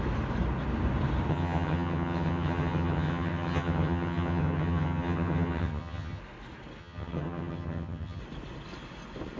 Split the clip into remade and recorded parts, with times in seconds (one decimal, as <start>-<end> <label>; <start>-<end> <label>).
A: 0.0-1.3 recorded; 1.3-6.2 remade; 6.2-6.8 recorded; 6.8-8.2 remade; 8.2-9.4 recorded